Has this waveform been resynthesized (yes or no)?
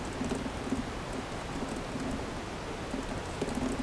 no